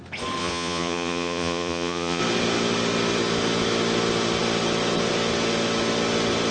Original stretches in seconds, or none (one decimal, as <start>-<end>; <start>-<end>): 0.0-0.4; 2.2-6.5